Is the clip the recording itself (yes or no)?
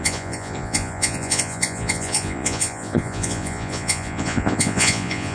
no